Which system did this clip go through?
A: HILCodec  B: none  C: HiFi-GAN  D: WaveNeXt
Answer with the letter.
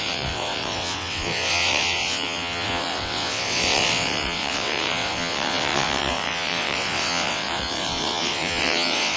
D